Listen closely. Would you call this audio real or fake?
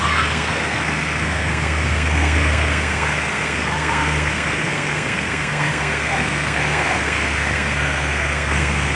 fake